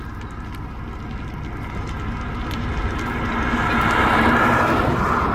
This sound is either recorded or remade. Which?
recorded